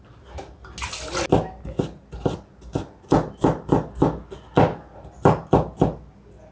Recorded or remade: recorded